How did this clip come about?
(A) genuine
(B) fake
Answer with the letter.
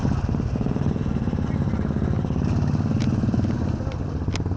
A